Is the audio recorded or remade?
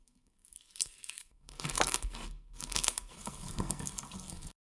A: remade